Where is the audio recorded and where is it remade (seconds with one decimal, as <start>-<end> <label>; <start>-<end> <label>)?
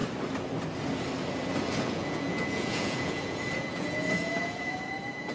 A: 0.0-1.8 recorded; 1.8-5.3 remade